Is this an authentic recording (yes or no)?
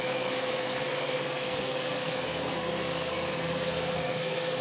no